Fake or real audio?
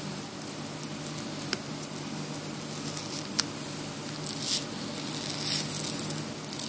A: real